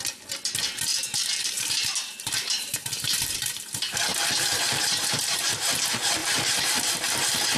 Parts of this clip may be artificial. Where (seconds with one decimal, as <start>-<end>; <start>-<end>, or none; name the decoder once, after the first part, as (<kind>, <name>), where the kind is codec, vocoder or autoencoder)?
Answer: 0.9-5.5 (vocoder, BigVGAN v2); 6.2-6.9